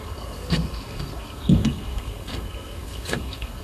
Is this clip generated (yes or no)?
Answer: yes